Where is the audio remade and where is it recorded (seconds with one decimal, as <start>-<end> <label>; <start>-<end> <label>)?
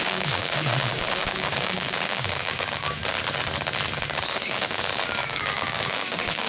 0.0-3.0 remade; 3.0-4.3 recorded; 4.3-6.5 remade